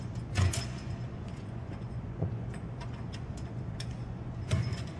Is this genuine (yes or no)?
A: no